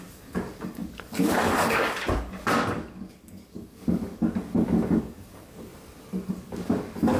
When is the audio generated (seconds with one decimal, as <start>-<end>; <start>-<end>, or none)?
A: 0.0-5.7; 6.3-7.2